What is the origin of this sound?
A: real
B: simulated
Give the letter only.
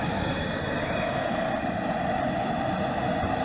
A